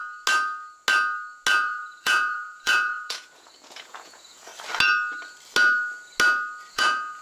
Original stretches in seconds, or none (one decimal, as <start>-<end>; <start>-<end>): 0.0-1.6; 4.5-6.7